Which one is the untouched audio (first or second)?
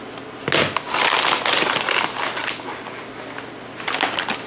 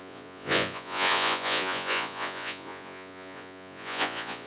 first